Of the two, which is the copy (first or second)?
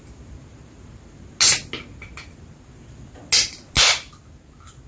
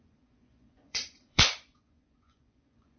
second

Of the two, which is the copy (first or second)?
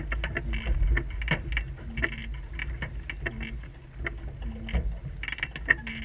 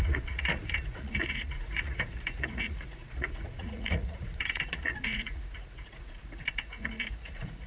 second